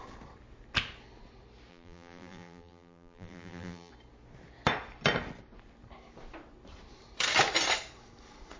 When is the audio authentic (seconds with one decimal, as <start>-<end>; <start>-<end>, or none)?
0.0-1.7; 3.9-8.6